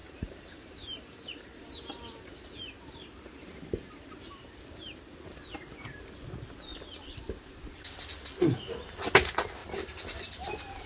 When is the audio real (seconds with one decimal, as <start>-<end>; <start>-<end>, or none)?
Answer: 2.2-9.6; 10.3-10.9